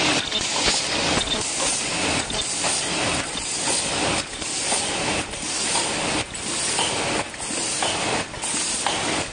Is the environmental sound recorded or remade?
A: recorded